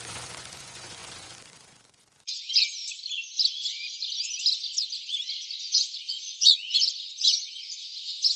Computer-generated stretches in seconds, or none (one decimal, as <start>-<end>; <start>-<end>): 0.0-2.8; 5.6-8.4